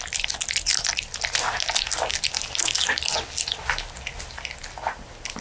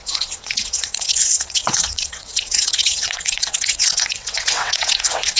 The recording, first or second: first